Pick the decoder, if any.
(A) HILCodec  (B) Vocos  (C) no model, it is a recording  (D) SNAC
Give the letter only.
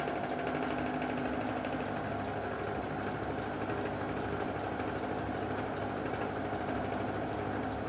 C